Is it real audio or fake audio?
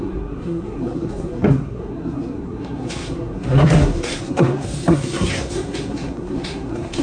fake